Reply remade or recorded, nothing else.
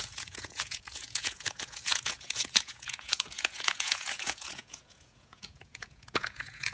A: remade